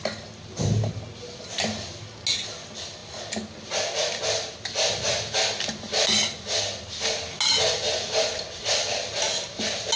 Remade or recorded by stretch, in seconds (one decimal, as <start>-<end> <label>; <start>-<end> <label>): 0.0-10.0 recorded